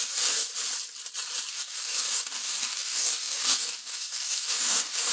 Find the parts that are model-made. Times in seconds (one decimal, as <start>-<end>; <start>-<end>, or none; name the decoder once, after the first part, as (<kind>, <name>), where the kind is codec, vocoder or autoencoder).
0.0-0.5 (codec, DAC); 1.5-5.1